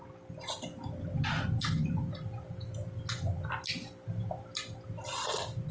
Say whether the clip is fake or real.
real